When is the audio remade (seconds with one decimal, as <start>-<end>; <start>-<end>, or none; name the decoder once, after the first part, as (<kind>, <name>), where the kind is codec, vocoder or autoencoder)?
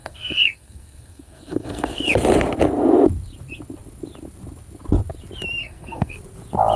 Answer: 0.0-2.1 (codec, SNAC); 5.6-6.2